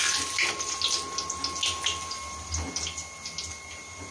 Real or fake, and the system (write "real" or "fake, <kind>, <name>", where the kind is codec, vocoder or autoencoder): real